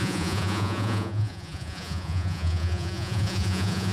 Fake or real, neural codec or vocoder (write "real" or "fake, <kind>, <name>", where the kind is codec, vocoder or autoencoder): fake, vocoder, Vocos